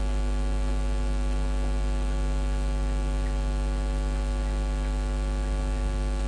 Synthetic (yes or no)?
no